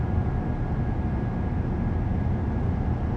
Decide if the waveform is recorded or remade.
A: recorded